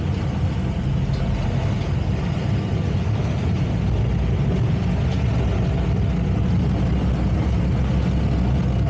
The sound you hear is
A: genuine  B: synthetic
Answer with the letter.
A